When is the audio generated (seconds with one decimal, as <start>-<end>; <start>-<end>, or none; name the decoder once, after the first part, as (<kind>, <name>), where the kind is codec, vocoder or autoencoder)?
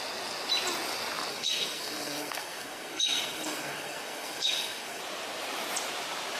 1.3-5.0 (codec, SNAC)